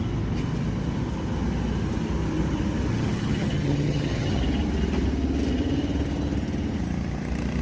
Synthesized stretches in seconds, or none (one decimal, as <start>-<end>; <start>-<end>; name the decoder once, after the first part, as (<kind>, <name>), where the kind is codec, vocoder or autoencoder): 2.9-4.4 (vocoder, HiFi-GAN)